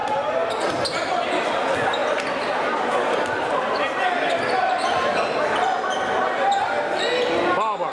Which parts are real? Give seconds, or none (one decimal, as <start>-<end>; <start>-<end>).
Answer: 0.0-7.9